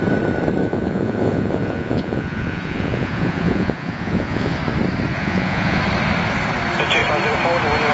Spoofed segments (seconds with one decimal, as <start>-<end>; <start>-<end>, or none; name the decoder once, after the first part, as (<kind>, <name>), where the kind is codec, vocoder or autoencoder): 0.6-4.6 (vocoder, Vocos); 5.1-5.8